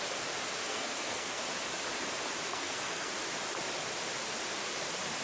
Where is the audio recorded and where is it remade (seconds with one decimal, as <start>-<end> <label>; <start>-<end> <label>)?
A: 0.0-0.6 recorded; 0.6-1.4 remade; 1.4-2.5 recorded; 2.5-3.1 remade; 3.1-5.2 recorded

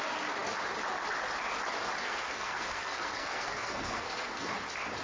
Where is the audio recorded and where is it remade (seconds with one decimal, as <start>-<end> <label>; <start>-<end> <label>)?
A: 0.0-2.0 recorded; 2.0-4.5 remade; 4.5-5.0 recorded

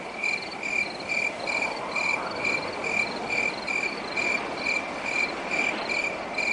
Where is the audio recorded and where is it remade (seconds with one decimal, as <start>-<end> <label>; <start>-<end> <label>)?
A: 0.0-6.5 recorded